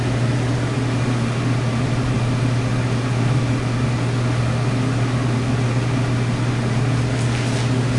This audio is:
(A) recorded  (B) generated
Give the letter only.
A